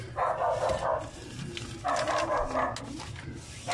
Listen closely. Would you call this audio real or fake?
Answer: real